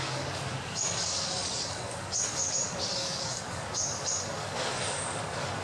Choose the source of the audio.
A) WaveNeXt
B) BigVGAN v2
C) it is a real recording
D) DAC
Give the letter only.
D